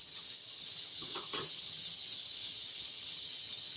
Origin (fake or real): fake